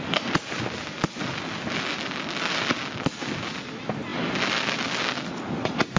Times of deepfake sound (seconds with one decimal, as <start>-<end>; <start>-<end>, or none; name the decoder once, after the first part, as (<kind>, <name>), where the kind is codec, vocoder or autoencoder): none